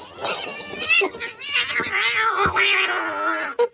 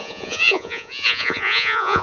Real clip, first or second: first